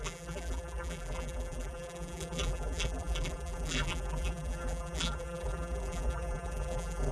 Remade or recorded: remade